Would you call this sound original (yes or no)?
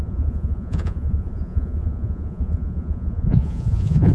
no